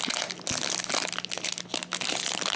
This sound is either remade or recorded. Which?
recorded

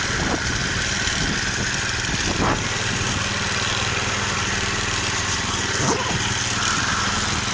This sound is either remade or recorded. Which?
recorded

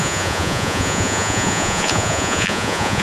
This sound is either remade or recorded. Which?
remade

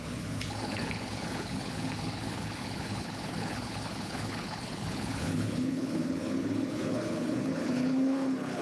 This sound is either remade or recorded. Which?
remade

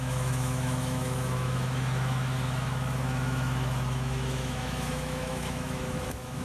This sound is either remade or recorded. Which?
remade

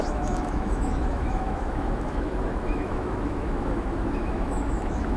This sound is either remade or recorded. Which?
remade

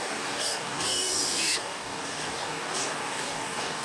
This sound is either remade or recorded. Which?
remade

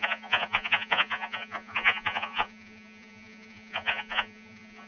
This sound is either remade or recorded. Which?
remade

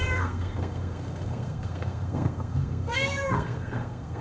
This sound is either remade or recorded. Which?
remade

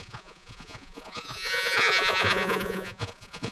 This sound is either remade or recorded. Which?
remade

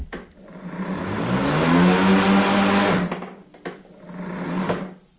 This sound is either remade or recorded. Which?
recorded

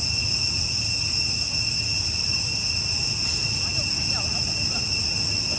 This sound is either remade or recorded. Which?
recorded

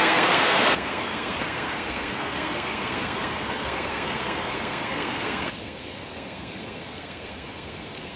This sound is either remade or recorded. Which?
remade